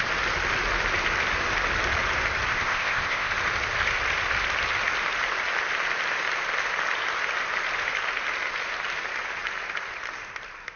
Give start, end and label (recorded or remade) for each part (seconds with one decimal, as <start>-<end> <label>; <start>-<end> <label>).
0.0-2.5 recorded; 2.5-3.3 remade; 3.3-10.8 recorded